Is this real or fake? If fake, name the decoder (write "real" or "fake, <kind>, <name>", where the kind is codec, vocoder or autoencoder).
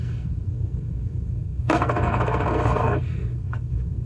fake, codec, SNAC